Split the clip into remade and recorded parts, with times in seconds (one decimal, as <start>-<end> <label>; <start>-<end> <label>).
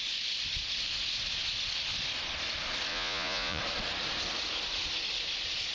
0.0-2.9 recorded; 2.9-3.6 remade; 3.6-5.7 recorded